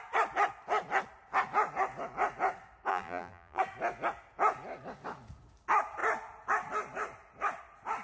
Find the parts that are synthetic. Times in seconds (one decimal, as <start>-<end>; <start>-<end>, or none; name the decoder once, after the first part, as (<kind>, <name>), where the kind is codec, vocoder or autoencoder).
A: 2.9-3.6 (vocoder, BigVGAN v2)